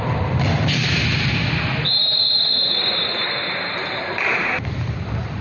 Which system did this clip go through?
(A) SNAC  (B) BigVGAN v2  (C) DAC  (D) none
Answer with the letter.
D